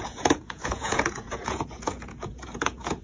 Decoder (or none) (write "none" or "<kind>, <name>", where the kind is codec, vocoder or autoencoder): vocoder, Vocos